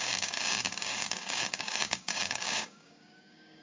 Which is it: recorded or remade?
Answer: remade